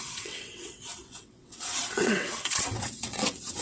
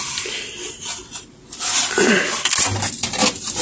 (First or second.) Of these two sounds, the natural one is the second